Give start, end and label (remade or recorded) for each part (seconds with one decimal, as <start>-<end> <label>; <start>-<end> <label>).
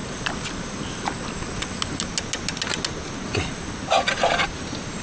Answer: 0.0-5.0 recorded